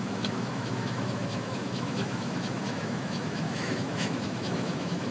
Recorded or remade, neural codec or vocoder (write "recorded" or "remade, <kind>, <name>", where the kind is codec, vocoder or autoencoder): remade, autoencoder, DAC-VAE